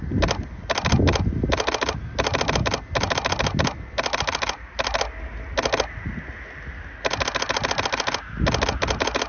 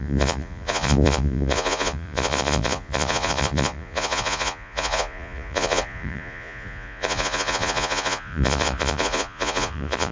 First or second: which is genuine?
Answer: first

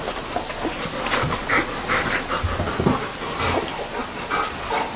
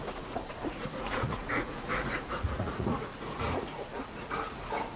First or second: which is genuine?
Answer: first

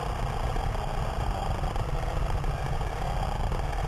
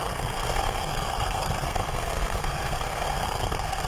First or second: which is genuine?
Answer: first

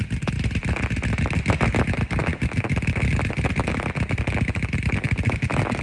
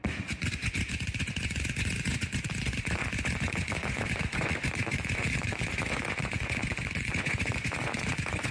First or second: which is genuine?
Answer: first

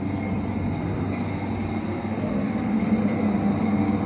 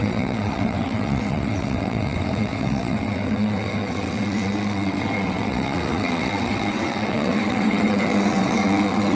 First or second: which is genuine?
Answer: first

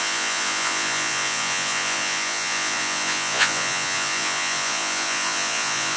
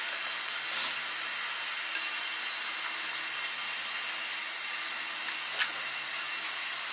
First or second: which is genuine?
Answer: second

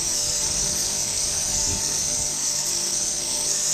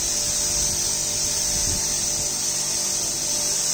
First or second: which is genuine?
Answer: second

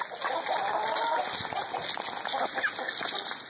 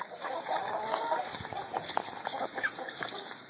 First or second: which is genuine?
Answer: first